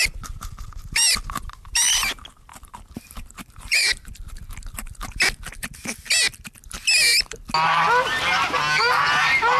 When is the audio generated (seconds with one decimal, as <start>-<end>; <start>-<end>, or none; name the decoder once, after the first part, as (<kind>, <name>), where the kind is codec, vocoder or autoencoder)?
2.5-4.3 (vocoder, BigVGAN v2)